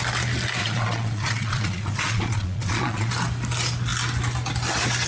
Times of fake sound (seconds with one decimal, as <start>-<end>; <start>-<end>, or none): 0.6-3.1

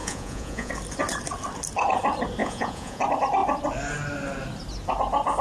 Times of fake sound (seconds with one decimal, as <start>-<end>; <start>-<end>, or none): 0.0-0.7; 2.4-3.0

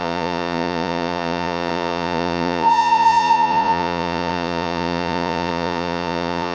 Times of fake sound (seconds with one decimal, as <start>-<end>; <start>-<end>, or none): 0.0-6.5